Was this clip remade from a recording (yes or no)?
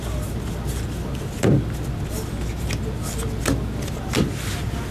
no